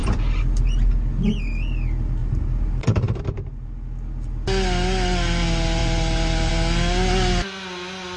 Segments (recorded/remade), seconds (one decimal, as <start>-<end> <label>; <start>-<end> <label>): 0.0-0.6 remade; 0.6-2.2 recorded; 2.2-3.2 remade; 3.2-5.8 recorded; 5.8-6.5 remade; 6.5-8.2 recorded